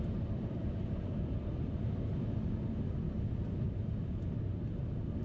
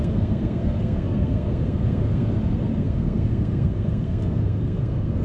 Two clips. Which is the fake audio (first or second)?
second